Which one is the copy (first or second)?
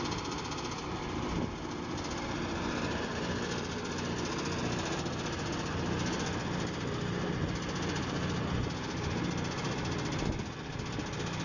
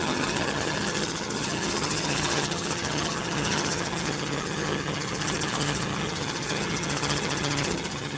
second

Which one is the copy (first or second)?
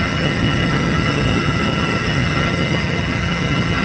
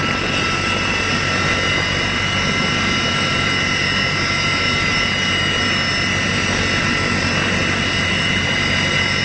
first